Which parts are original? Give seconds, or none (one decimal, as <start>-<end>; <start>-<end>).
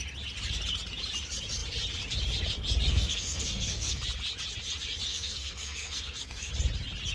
0.0-2.9; 4.0-5.1; 6.5-7.1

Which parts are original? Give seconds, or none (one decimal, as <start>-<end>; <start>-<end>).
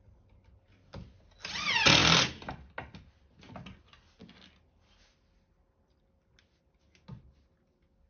0.0-8.1